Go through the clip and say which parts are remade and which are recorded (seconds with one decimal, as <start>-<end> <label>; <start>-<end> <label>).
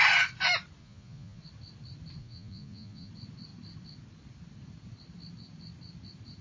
0.0-0.8 recorded; 0.8-1.4 remade; 1.4-2.2 recorded; 2.2-3.1 remade; 3.1-6.4 recorded